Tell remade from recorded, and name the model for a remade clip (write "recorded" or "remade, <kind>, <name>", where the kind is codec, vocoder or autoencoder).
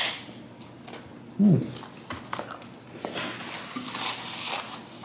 recorded